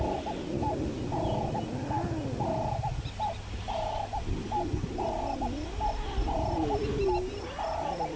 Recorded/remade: recorded